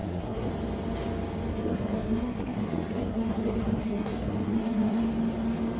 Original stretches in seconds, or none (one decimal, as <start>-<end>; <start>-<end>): 0.5-1.5; 5.0-5.8